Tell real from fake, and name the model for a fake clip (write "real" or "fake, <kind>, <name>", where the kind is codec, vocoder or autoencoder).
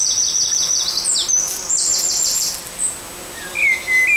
real